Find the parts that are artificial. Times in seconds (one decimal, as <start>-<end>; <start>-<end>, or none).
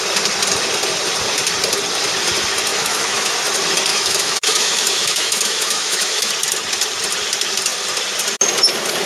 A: 2.7-3.3; 3.9-6.3